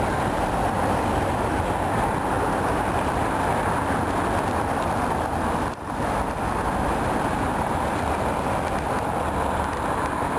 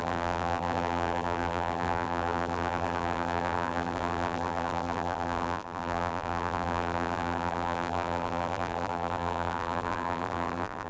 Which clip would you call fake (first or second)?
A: second